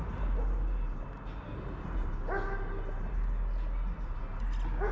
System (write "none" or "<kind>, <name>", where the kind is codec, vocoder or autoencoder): none